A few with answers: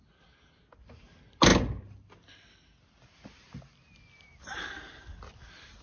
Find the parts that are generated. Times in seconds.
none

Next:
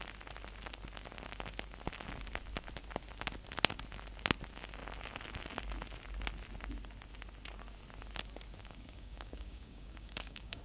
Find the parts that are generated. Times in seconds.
8.6-10.6 (codec, DAC)

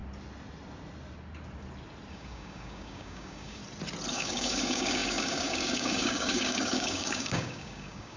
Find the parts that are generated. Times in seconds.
2.1-3.6 (codec, DAC); 4.1-8.2

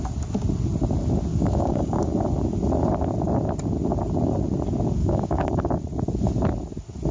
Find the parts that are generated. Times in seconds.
1.3-2.0 (codec, DAC); 5.0-5.6

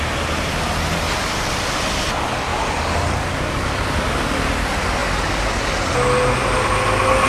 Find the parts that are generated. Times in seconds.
2.5-4.5 (codec, DAC)

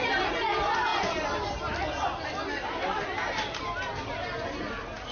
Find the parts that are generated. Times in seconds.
none